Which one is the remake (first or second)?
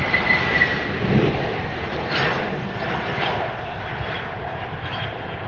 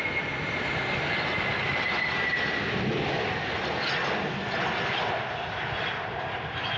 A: first